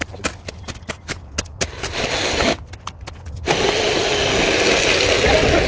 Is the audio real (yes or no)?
yes